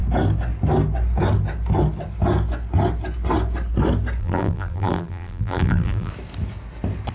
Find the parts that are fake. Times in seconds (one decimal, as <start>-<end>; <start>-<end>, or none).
4.2-6.1